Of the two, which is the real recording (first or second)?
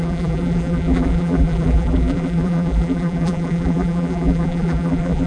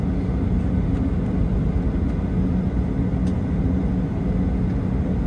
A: second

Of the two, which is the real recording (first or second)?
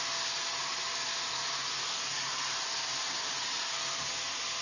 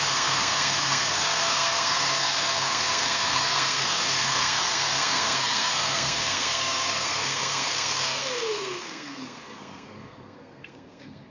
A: first